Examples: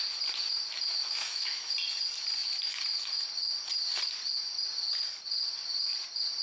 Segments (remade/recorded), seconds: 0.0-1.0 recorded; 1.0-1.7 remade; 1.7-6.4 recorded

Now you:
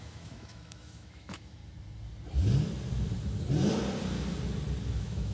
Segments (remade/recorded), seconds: 0.0-1.6 remade; 1.6-4.8 recorded; 4.8-5.3 remade

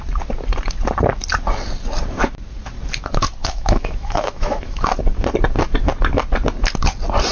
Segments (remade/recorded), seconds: 0.0-3.4 recorded; 3.4-4.8 remade; 4.8-7.3 recorded

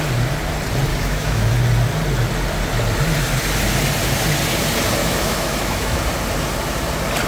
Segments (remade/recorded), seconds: 0.0-0.9 recorded; 0.9-1.5 remade; 1.5-5.0 recorded; 5.0-6.0 remade; 6.0-7.3 recorded

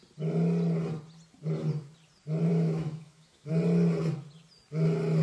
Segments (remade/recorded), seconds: 0.0-2.5 recorded; 2.5-3.5 remade; 3.5-5.2 recorded

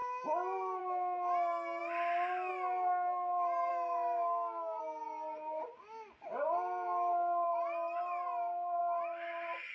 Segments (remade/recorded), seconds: 0.0-3.7 recorded; 3.7-4.8 remade; 4.8-9.7 recorded